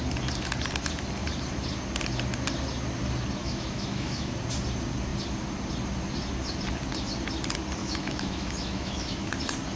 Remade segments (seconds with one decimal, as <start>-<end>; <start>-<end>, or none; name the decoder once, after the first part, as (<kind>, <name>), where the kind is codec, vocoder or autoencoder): 3.4-4.3 (autoencoder, DAC-VAE); 7.8-9.3

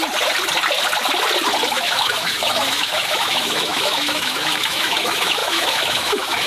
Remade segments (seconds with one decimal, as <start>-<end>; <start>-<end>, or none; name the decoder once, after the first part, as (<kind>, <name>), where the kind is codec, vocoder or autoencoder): 1.7-6.5 (autoencoder, DAC-VAE)

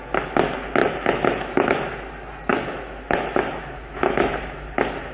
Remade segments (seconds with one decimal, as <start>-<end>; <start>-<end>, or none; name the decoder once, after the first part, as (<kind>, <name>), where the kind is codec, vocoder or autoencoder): 0.8-1.8 (autoencoder, DAC-VAE); 2.5-4.4

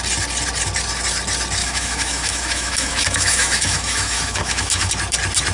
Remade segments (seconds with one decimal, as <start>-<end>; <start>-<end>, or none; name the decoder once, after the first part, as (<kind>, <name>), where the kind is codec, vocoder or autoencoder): 1.6-4.9 (autoencoder, DAC-VAE)

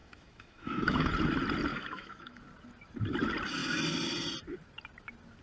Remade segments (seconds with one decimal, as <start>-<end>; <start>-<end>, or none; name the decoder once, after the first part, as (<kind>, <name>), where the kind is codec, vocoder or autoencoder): 0.0-1.1 (autoencoder, DAC-VAE); 1.7-2.4